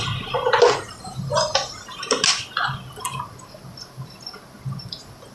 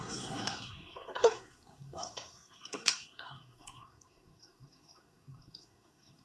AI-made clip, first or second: second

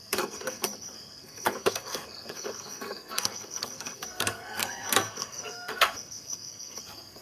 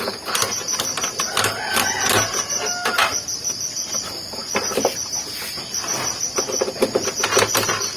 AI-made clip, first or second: first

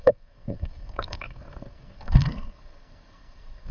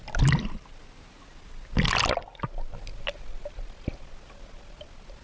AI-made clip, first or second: first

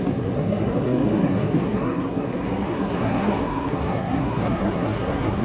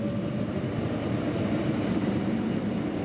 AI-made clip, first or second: first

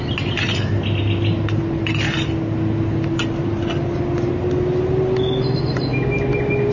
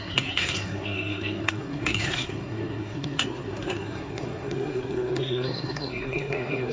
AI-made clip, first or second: second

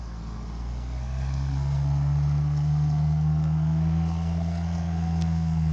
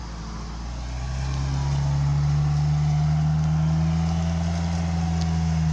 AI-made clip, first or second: first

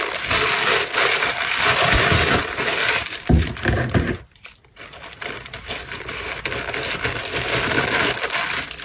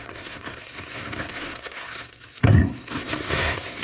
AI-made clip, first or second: second